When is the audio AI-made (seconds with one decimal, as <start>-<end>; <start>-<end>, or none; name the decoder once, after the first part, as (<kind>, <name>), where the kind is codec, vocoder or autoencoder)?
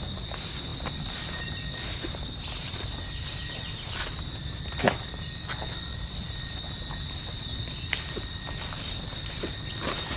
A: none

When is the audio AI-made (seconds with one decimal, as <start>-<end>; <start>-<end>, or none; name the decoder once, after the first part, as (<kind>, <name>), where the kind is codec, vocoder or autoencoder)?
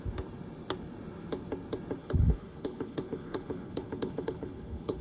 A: 2.0-5.0 (codec, HILCodec)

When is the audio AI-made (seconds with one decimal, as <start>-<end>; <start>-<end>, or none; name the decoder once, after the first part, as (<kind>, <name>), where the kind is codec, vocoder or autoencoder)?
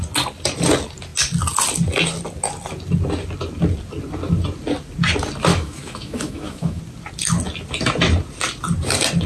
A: 5.5-6.8 (autoencoder, DAC-VAE)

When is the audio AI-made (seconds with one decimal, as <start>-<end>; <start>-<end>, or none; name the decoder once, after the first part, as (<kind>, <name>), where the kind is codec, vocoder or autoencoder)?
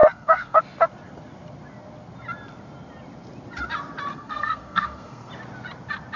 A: 0.0-0.6 (codec, SNAC); 4.1-5.3